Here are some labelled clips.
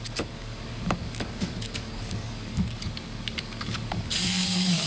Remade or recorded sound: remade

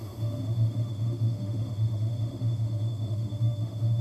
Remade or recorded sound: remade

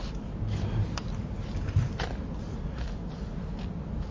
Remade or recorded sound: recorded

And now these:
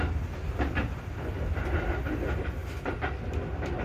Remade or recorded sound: recorded